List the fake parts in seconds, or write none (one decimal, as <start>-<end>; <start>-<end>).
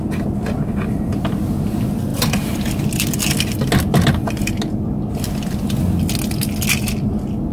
none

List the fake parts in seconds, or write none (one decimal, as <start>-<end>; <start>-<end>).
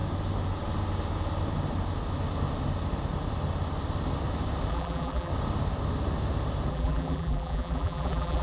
4.7-5.3; 6.7-8.4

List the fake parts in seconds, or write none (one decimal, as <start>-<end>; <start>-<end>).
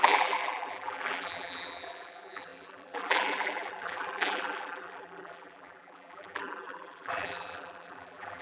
0.0-8.4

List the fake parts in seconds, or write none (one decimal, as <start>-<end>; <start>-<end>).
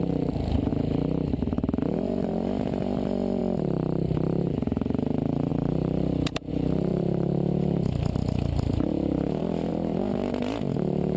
0.0-0.7; 1.3-3.4; 4.4-11.2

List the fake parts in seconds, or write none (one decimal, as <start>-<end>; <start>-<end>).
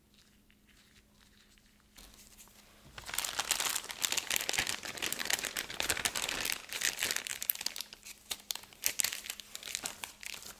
5.2-5.7; 7.3-9.2